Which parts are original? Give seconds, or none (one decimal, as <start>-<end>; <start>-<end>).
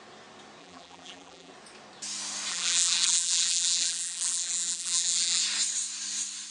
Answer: 0.0-0.6; 1.5-2.5; 5.4-6.5